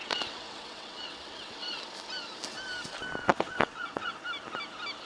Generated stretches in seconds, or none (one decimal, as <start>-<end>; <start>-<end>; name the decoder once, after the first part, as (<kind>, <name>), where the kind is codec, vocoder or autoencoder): 0.0-1.8 (vocoder, WaveNeXt); 3.2-4.1